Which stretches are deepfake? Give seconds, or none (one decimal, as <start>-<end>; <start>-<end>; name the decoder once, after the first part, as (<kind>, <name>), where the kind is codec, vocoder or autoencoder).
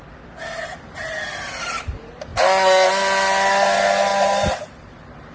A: none